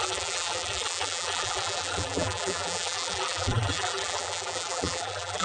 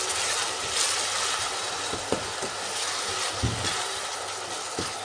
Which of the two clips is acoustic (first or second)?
second